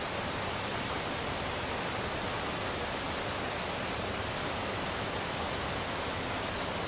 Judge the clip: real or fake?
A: real